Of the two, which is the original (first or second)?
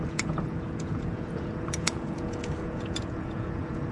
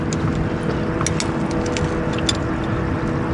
second